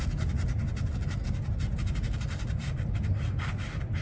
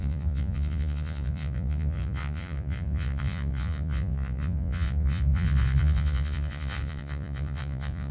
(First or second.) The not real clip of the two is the second